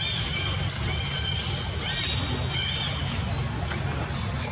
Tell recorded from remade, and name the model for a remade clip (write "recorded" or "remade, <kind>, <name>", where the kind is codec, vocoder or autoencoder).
recorded